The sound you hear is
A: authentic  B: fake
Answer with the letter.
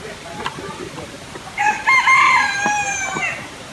B